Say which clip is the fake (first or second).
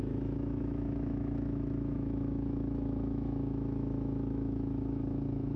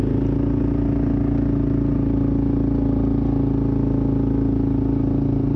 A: first